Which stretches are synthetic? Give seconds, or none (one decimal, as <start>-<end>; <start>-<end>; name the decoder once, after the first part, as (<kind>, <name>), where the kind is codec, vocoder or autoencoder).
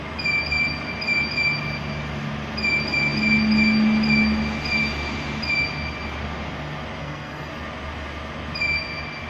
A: 7.0-7.5 (codec, SNAC)